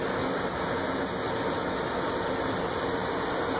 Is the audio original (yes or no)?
yes